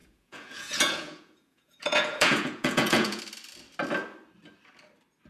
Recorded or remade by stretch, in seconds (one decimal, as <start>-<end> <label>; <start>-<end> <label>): 0.0-3.2 remade; 3.2-5.3 recorded